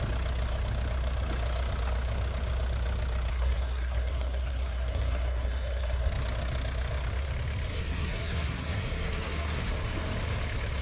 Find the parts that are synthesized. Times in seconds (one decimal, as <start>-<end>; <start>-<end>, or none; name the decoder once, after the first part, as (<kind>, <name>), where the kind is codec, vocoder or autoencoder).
3.3-6.1 (codec, SNAC); 7.7-9.7

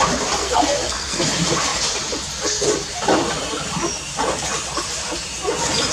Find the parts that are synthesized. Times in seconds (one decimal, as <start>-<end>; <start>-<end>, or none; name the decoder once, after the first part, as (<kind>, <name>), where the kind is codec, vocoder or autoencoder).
0.4-1.2 (codec, SNAC)

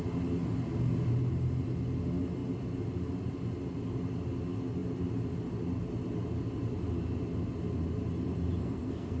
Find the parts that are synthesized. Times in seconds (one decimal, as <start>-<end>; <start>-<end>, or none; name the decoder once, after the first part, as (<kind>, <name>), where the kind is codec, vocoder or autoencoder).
8.6-9.2 (codec, SNAC)